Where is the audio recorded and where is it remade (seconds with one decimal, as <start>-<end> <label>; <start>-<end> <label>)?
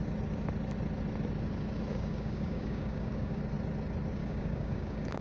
0.0-1.9 recorded; 1.9-3.4 remade; 3.4-4.2 recorded; 4.2-5.2 remade